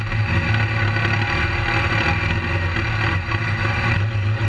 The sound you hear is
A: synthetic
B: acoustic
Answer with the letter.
B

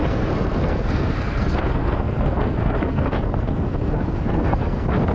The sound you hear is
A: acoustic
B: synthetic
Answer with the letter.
B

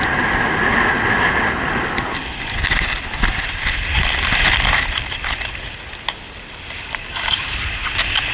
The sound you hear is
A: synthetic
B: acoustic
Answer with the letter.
B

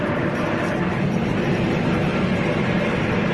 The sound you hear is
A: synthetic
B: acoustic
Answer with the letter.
B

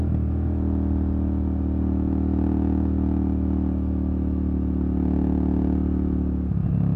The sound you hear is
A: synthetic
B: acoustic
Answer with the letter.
B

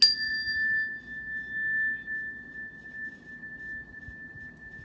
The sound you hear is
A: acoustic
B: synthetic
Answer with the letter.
A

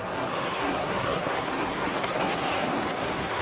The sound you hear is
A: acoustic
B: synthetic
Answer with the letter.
B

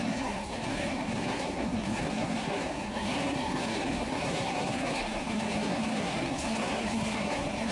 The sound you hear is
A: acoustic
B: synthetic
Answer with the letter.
B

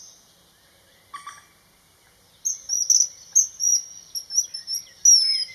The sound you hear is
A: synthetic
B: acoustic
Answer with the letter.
B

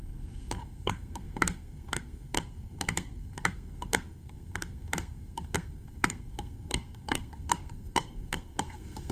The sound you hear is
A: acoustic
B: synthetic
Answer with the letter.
B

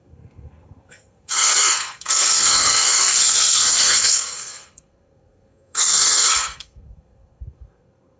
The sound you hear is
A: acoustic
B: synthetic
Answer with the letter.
B